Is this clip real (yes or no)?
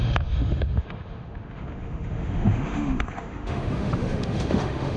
no